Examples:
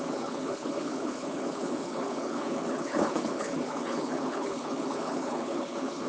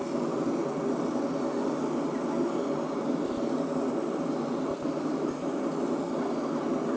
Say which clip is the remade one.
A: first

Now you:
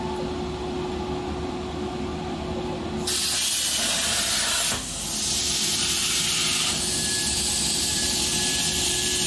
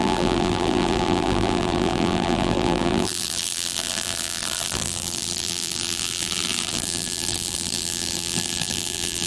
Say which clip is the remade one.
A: second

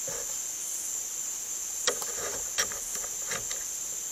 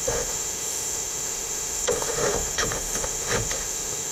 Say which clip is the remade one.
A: second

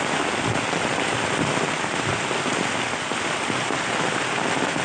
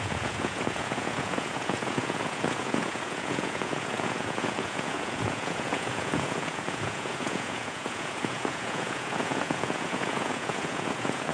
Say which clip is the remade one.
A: second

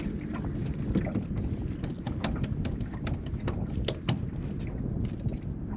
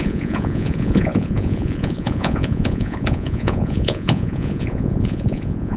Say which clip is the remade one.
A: second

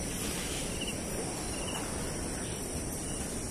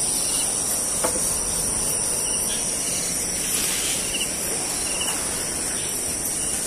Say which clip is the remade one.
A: first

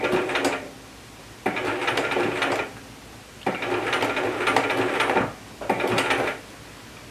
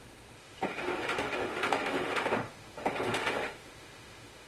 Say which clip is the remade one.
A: second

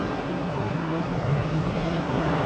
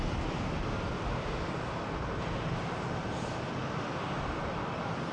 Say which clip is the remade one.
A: first